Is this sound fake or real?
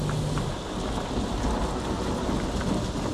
real